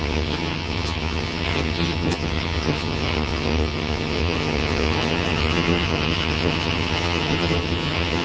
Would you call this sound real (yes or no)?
no